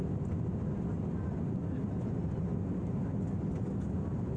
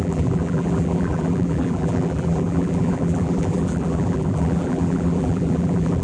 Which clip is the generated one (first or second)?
second